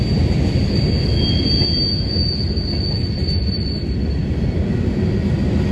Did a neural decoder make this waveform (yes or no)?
no